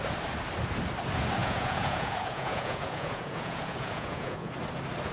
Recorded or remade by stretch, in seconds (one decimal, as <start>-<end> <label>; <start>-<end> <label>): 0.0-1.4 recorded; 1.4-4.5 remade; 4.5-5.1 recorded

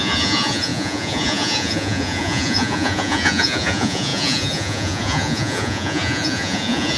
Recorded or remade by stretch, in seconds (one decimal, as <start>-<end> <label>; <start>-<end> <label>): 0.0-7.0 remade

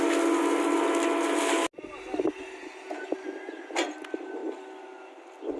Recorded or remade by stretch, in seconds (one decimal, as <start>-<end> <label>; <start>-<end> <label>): 0.0-5.6 recorded